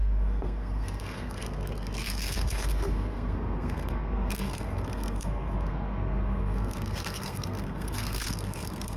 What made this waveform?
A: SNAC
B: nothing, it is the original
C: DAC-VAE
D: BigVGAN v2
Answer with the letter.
A